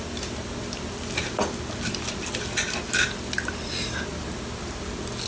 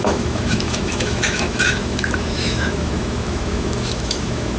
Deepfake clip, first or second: second